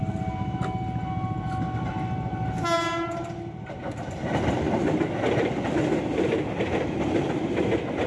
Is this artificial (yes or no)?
no